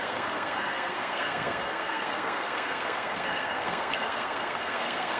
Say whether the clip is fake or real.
fake